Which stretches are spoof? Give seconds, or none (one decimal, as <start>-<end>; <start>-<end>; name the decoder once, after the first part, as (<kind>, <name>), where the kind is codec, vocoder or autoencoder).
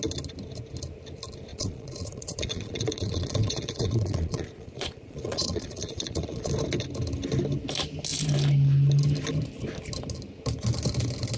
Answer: 1.5-6.5 (vocoder, Vocos)